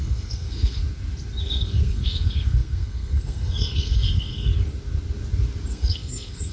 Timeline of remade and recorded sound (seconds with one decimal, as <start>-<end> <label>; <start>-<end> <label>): 0.0-0.8 remade; 0.8-1.4 recorded; 1.4-4.5 remade; 4.5-5.7 recorded; 5.7-6.5 remade